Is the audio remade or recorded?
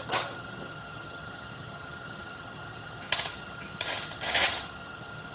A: remade